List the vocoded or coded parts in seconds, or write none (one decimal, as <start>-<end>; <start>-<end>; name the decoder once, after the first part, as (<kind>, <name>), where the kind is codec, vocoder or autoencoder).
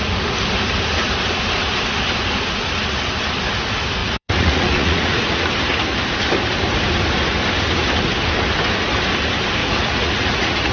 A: 4.0-5.5 (vocoder, Vocos); 9.6-10.7